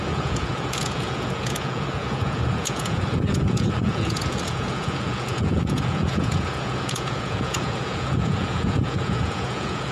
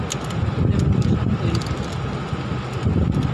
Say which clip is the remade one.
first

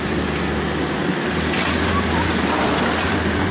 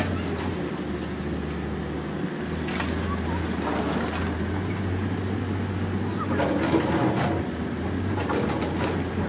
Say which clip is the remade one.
first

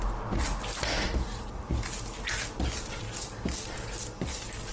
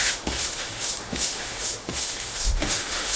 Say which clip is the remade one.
second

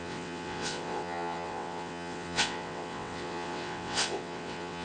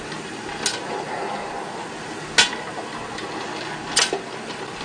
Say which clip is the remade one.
first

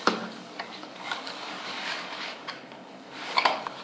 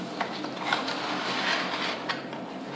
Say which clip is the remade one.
first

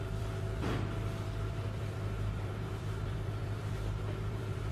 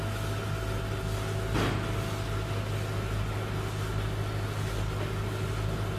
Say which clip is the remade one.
first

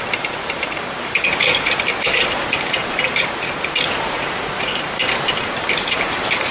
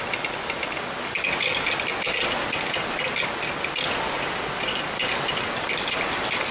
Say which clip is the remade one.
first